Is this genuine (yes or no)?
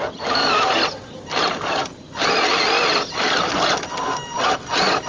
no